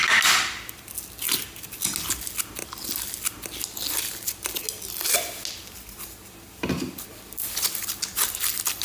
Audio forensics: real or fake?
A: real